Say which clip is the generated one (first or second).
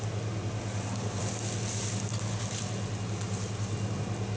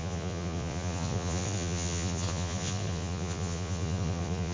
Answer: second